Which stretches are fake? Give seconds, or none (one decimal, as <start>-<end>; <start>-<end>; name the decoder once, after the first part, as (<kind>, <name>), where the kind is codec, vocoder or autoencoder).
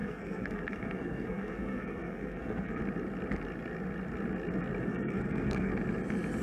0.0-2.8 (codec, SNAC); 4.8-5.7